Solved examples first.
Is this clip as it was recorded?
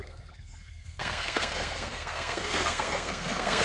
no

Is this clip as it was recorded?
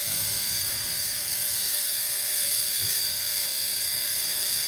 no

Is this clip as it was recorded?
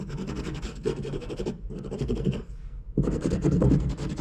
no